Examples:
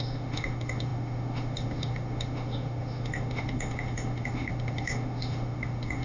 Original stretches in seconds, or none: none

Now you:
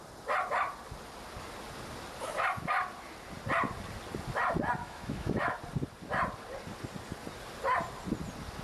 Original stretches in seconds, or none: 0.0-4.8; 5.6-8.6

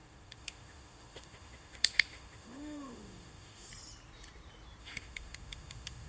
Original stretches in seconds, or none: 3.7-4.8

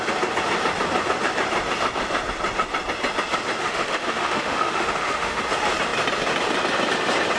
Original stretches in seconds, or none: 0.0-3.6; 5.4-7.4

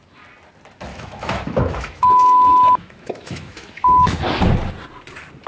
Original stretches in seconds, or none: 0.0-0.9; 4.2-5.5

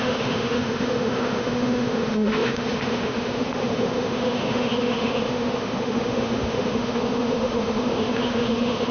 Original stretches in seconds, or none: none

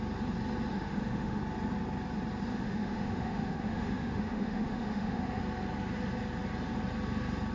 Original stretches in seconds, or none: 0.0-0.7; 1.4-2.5; 5.4-7.5